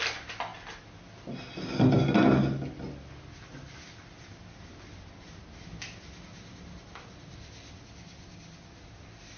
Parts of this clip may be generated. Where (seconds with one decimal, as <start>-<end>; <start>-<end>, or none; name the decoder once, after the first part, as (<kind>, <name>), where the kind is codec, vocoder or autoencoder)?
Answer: none